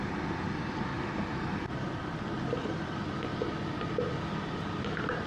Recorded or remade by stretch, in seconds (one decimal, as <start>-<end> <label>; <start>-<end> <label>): 0.0-5.3 recorded